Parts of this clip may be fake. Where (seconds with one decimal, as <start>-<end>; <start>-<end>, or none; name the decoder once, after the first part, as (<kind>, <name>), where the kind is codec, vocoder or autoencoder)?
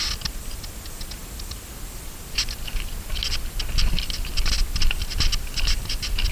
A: none